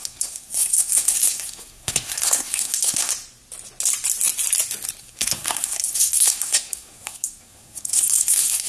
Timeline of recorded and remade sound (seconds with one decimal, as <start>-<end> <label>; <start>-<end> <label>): 0.0-3.1 remade; 3.1-5.0 recorded; 5.0-8.7 remade